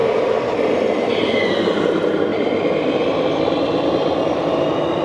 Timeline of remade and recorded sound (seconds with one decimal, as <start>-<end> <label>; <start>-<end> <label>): 0.0-5.0 recorded